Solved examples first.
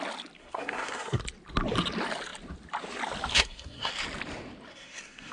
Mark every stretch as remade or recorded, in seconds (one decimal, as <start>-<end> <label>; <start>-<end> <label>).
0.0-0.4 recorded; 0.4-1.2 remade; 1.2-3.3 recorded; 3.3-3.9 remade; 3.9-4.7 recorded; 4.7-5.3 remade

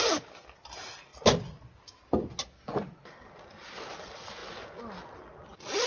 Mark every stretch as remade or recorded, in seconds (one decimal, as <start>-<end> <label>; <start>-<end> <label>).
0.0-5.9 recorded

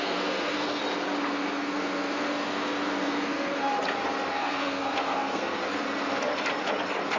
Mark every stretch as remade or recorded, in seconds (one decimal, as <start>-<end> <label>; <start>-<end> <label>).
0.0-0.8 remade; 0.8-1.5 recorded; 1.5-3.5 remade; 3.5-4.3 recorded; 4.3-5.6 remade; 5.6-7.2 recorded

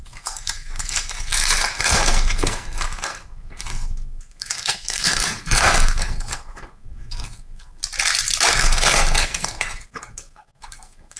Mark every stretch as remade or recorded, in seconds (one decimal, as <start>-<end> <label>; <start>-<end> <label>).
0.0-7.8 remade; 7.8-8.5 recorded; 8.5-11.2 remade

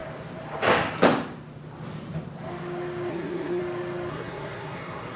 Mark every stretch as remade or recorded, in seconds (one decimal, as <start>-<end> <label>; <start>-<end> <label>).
0.0-3.1 recorded; 3.1-3.6 remade; 3.6-4.1 recorded; 4.1-5.2 remade

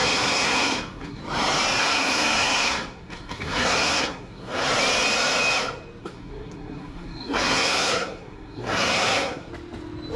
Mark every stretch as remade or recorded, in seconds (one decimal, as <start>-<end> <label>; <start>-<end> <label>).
0.0-1.2 remade; 1.2-1.8 recorded; 1.8-4.6 remade; 4.6-6.0 recorded; 6.0-9.5 remade; 9.5-10.2 recorded